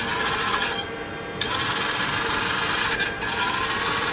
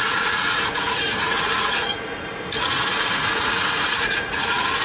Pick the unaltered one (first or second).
first